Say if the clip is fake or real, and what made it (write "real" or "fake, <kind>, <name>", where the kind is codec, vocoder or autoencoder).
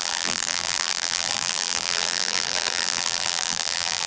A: fake, vocoder, BigVGAN v2